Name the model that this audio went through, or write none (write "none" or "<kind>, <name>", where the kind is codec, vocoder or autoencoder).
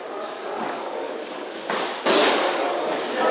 codec, DAC